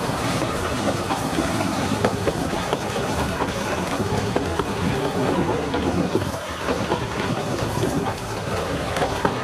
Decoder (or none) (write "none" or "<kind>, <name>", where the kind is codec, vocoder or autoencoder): codec, SNAC